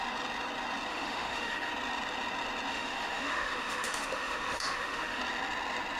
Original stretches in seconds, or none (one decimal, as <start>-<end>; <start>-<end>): 0.0-0.9; 1.7-2.7; 5.2-6.0